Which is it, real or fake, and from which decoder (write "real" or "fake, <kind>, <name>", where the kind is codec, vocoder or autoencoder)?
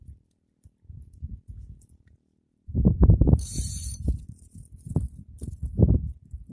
fake, vocoder, BigVGAN v2